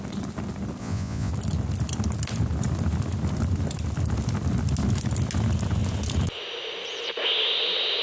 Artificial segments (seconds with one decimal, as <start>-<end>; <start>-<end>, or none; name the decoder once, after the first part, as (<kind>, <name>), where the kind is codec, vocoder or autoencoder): 0.8-1.3 (vocoder, Vocos)